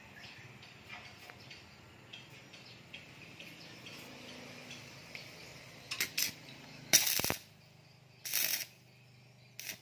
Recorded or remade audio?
recorded